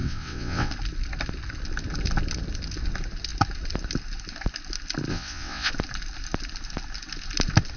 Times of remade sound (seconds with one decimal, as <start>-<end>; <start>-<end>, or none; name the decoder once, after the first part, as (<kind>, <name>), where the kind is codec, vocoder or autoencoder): 0.0-0.7 (vocoder, WaveNeXt); 5.1-5.7